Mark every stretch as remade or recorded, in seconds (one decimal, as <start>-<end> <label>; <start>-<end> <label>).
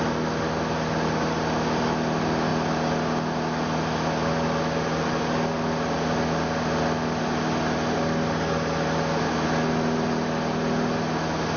0.0-11.6 recorded